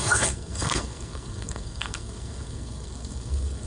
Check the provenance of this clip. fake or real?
fake